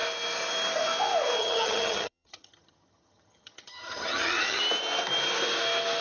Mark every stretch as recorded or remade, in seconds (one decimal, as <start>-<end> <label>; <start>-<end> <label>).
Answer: 0.0-1.4 recorded; 1.4-4.6 remade; 4.6-6.0 recorded